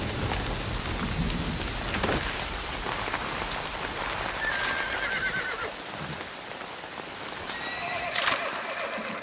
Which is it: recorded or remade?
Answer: recorded